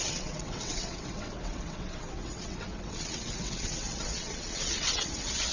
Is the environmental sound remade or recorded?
remade